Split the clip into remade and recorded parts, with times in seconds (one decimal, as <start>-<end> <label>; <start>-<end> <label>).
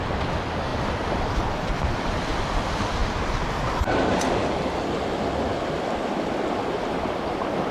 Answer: 0.0-7.7 recorded